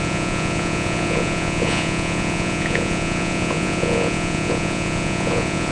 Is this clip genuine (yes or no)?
no